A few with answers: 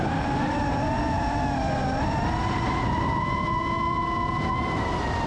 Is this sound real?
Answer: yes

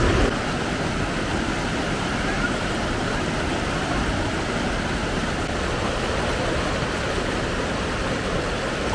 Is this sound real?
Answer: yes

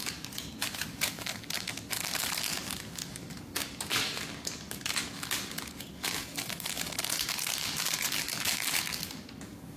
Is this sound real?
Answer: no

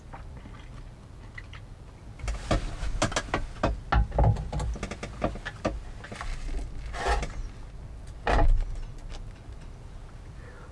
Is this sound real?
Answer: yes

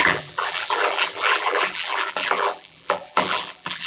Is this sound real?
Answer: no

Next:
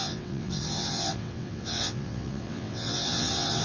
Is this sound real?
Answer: no